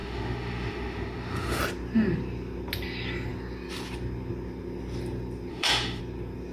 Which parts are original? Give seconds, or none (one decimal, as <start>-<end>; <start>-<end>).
1.6-5.5; 6.0-6.5